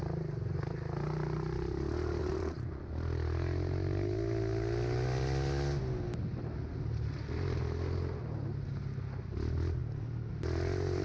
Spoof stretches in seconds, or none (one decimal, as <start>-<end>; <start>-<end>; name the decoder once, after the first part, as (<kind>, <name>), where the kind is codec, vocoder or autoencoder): 2.2-2.9 (vocoder, Vocos)